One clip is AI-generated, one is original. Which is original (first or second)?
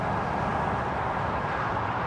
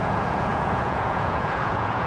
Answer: first